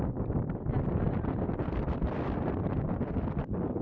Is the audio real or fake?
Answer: fake